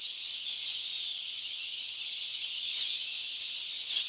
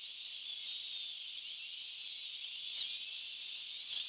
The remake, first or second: first